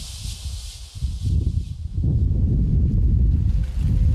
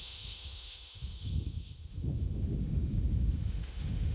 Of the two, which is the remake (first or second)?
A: second